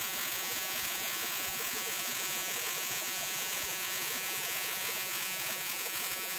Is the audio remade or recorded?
remade